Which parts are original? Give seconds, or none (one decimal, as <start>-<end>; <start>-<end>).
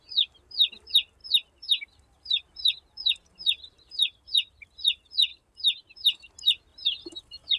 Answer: 0.0-1.2; 4.6-5.3; 6.3-6.7